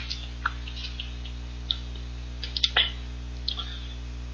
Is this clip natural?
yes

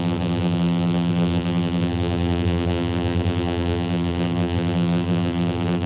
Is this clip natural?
no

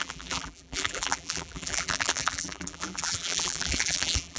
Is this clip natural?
no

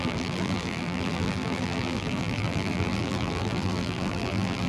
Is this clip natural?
no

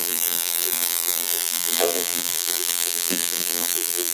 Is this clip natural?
no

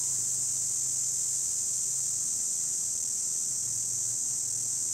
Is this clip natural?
yes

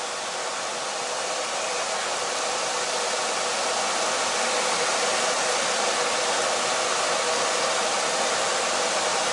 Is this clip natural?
yes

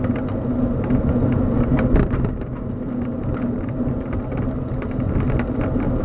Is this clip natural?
yes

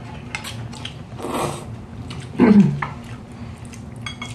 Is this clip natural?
yes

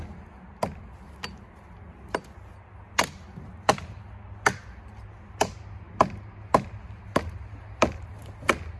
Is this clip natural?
yes